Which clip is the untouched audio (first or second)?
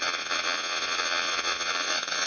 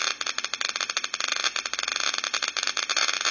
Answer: second